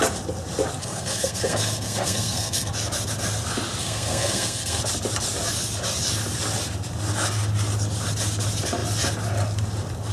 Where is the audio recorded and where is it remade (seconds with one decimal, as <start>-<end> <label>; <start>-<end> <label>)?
0.0-0.8 recorded; 0.8-2.7 remade; 2.7-3.8 recorded; 3.8-4.8 remade; 4.8-10.1 recorded